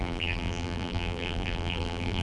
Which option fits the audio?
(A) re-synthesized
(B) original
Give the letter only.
A